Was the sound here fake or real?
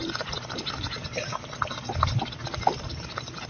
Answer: real